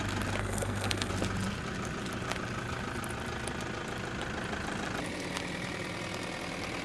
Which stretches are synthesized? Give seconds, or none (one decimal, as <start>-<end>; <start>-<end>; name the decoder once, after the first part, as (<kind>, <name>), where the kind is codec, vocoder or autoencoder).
0.4-1.1 (codec, SNAC)